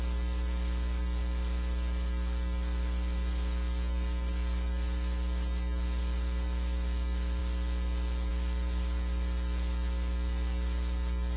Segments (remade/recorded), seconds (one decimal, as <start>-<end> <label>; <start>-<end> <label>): 0.0-11.4 recorded